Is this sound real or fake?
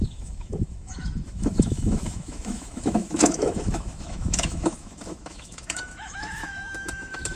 fake